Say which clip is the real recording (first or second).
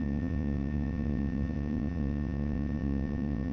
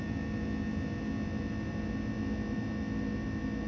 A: second